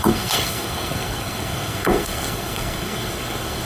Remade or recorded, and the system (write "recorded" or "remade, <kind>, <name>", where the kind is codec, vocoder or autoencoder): remade, codec, SNAC